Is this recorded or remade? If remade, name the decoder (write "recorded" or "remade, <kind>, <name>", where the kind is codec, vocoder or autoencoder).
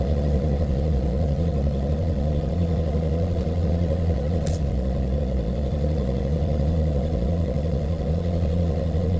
remade, vocoder, Vocos